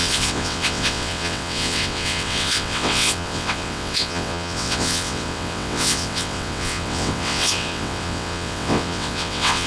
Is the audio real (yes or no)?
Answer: no